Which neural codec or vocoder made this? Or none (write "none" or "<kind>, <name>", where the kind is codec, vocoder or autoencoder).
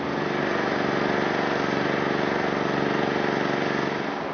none